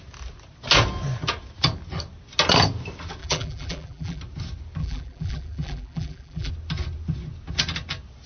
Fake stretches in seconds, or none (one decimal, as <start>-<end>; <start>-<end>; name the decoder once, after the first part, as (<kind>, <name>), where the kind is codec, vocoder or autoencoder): 3.2-4.2 (vocoder, BigVGAN v2); 4.8-6.5